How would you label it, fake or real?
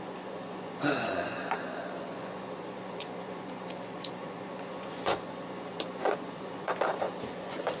fake